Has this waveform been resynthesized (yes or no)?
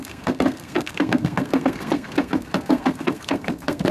yes